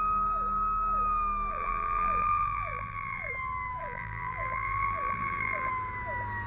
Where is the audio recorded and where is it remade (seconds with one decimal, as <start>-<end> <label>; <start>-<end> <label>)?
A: 0.0-1.5 recorded; 1.5-3.3 remade; 3.3-3.8 recorded; 3.8-5.7 remade; 5.7-6.5 recorded